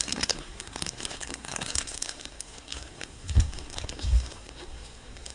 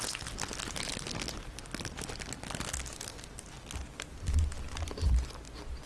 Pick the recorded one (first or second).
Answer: second